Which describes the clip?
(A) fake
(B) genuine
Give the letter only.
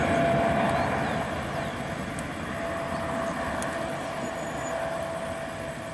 B